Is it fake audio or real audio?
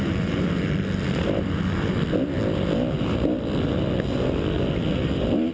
real